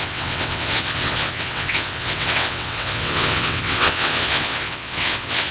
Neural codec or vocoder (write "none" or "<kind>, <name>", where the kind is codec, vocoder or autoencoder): vocoder, WaveNeXt